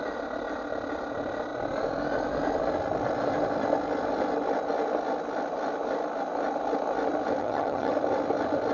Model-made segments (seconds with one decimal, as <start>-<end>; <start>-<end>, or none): 7.4-7.9